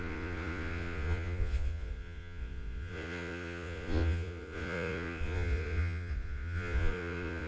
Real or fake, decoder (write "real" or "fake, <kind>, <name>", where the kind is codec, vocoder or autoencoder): fake, vocoder, Vocos